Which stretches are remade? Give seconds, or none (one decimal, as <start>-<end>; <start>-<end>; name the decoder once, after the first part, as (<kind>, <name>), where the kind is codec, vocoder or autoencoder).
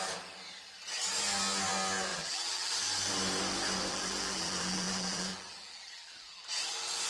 2.1-2.7 (vocoder, BigVGAN v2); 3.9-6.4